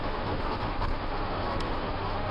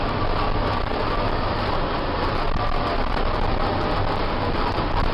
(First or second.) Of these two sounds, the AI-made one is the first